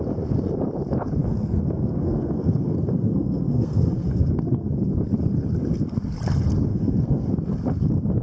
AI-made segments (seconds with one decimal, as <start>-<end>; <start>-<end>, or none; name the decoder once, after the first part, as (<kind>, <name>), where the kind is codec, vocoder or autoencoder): 1.2-4.7 (codec, SNAC); 6.7-7.3